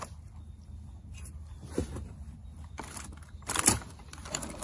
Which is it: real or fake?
fake